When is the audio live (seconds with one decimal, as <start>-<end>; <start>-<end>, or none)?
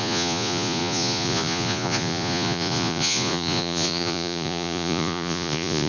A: none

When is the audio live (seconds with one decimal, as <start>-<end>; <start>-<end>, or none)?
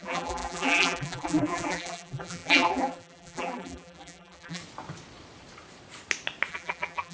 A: 4.6-6.5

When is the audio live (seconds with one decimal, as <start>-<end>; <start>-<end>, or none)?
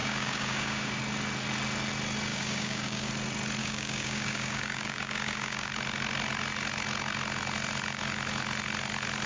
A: 1.0-2.3; 3.1-3.6; 5.7-9.3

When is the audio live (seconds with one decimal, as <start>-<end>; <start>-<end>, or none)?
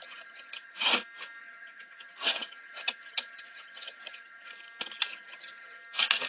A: 0.9-1.4; 4.5-5.1; 5.8-6.3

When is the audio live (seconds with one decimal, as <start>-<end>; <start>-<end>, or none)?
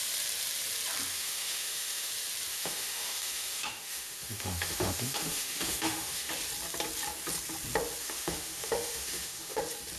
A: 0.0-1.1; 2.1-2.5; 6.3-8.0; 9.6-10.0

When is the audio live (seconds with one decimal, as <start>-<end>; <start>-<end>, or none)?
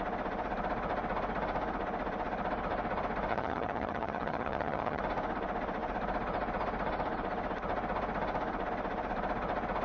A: 0.0-3.3; 5.0-9.8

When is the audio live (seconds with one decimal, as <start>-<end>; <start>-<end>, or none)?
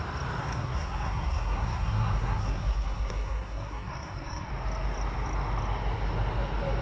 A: 0.0-0.4; 4.5-6.8